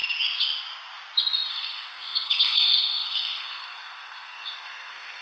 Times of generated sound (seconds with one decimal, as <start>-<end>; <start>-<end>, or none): 1.5-5.2